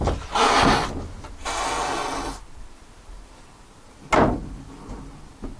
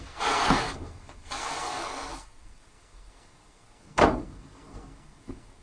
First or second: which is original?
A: first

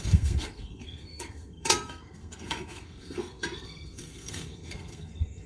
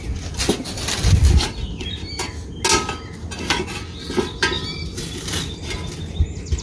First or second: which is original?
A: second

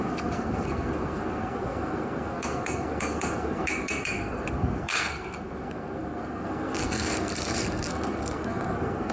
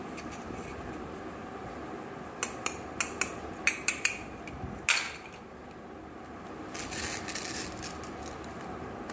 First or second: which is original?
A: second